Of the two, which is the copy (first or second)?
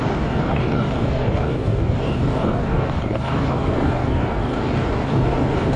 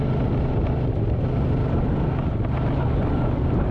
first